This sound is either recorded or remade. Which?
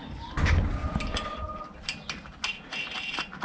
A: recorded